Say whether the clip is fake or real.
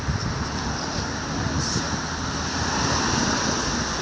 real